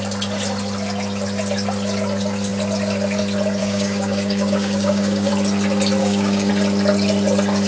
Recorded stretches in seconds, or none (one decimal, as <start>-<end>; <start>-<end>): 0.0-3.6; 5.3-6.0; 6.5-7.7